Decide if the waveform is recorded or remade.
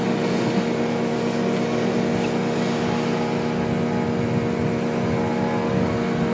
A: recorded